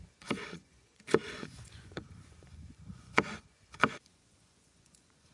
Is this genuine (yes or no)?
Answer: no